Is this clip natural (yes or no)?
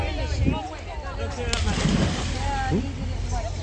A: yes